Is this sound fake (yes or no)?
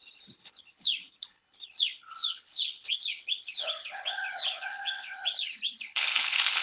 yes